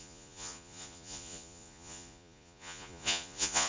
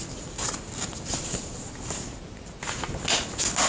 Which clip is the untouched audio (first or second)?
second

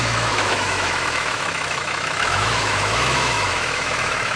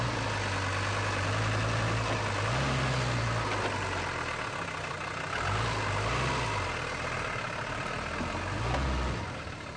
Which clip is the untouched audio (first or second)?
second